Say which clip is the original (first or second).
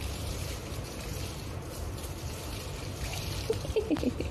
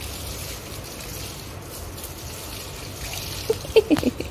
second